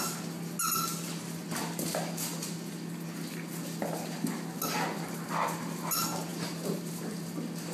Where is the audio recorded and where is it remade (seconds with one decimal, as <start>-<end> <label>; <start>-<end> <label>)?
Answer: 0.0-7.7 recorded